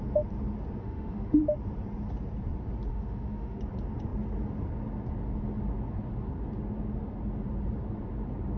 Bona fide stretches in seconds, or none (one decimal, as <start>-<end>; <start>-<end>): 0.0-0.8; 1.4-2.9; 3.6-8.6